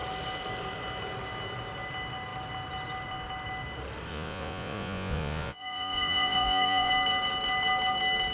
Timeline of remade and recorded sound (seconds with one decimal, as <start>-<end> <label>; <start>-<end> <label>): 0.0-4.1 recorded; 4.1-6.9 remade; 6.9-8.3 recorded

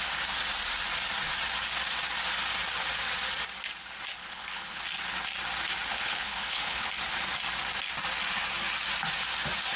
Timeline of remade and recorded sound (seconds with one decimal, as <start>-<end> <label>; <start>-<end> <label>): 0.0-4.2 recorded; 4.2-4.8 remade; 4.8-5.9 recorded; 5.9-6.9 remade; 6.9-9.8 recorded

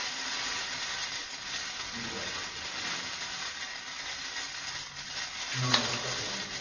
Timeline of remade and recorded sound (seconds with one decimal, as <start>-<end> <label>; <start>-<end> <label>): 0.0-6.6 recorded